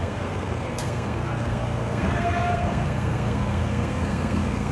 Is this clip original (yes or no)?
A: no